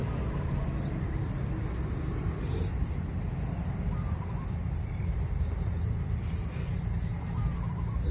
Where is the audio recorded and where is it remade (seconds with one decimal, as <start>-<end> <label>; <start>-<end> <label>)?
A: 0.0-8.1 recorded